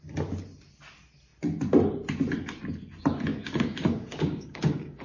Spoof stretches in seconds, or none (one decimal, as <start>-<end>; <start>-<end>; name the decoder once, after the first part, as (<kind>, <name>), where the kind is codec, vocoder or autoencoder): 3.3-5.0 (codec, DAC)